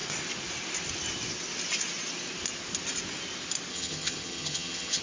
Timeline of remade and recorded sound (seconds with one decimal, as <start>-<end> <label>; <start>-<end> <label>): 0.0-3.7 recorded; 3.7-5.0 remade